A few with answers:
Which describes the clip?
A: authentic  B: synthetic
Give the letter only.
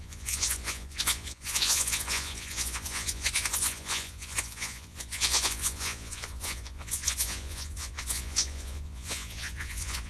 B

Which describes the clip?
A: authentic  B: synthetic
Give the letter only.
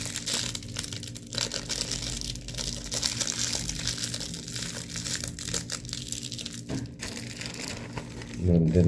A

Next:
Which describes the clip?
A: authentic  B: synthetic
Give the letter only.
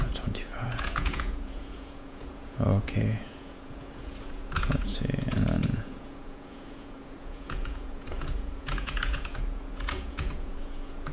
B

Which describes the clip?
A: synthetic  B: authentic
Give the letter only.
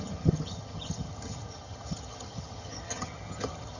A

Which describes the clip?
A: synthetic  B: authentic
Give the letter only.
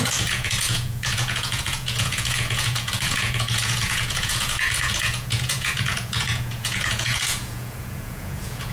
A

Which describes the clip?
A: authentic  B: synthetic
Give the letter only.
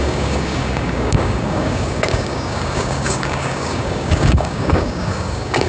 B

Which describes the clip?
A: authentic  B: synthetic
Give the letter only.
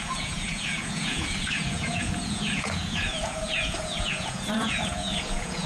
B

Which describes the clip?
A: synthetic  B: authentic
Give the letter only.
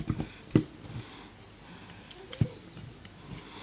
B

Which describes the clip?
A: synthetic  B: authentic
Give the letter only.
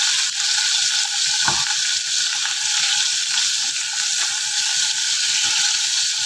B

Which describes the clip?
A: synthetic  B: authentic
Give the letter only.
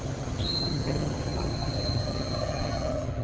A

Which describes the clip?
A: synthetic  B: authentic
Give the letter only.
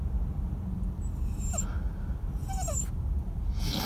B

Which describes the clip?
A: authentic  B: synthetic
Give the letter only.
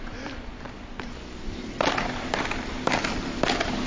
B